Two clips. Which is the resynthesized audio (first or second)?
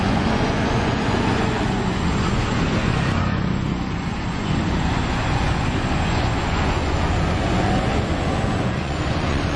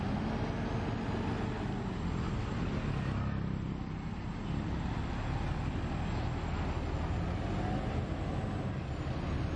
first